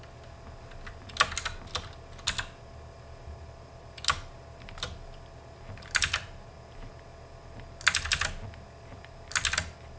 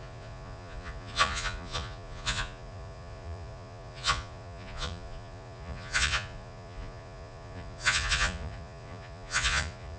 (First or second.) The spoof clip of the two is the second